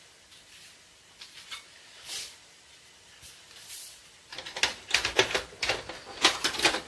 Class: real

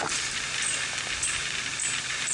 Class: real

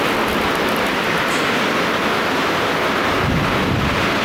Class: real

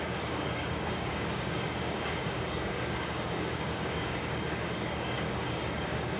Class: fake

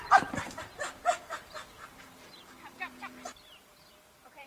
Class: fake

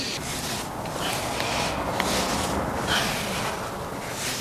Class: real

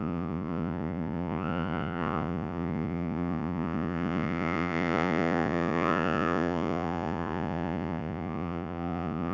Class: fake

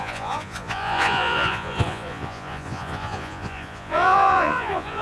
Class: fake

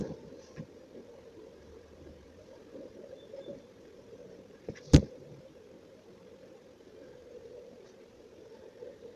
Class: fake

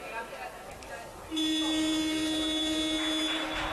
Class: real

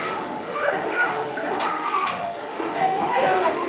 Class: fake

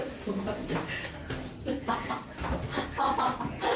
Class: real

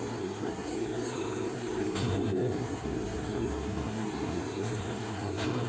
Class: fake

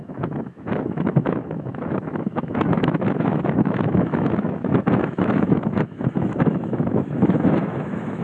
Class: fake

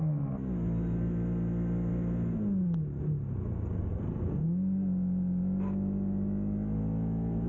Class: real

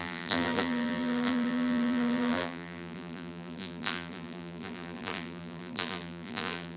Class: fake